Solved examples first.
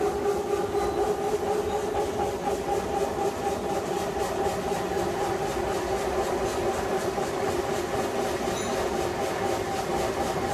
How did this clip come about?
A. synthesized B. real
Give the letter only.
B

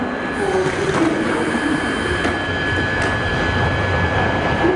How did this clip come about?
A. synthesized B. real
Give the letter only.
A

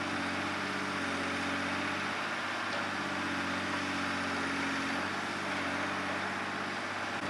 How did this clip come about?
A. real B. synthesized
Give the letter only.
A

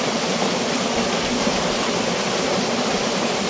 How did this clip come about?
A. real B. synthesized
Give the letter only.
A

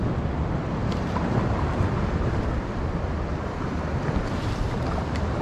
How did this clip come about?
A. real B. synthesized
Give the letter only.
A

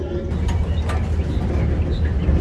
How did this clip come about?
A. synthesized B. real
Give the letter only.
B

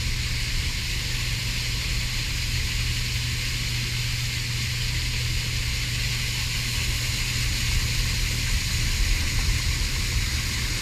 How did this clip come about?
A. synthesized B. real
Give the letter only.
B